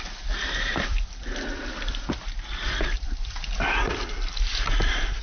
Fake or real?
fake